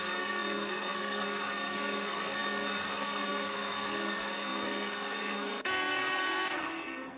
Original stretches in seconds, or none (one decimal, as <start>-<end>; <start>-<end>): none